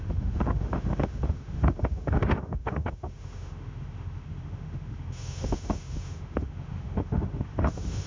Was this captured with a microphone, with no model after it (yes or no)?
no